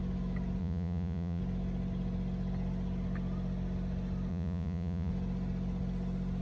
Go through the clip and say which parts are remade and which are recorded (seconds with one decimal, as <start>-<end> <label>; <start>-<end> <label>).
0.0-0.6 recorded; 0.6-1.4 remade; 1.4-4.3 recorded; 4.3-5.1 remade; 5.1-6.4 recorded